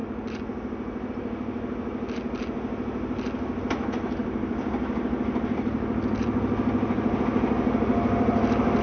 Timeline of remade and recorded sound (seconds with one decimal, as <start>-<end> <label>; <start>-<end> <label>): 0.0-4.2 recorded; 4.2-7.2 remade; 7.2-8.8 recorded

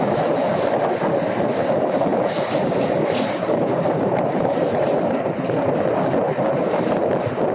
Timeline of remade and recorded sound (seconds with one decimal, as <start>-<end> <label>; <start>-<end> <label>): 0.0-2.1 recorded; 2.1-5.4 remade; 5.4-7.5 recorded